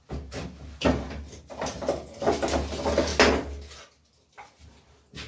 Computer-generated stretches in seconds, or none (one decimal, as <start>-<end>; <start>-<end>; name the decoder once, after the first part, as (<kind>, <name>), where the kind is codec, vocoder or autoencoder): none